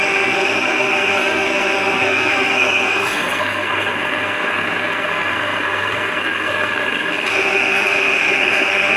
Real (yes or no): no